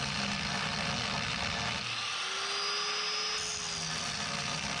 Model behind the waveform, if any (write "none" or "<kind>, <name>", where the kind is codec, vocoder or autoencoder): none